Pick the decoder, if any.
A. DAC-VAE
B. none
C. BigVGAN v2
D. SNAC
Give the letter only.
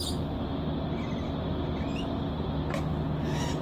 B